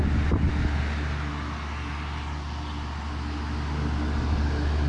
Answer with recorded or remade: recorded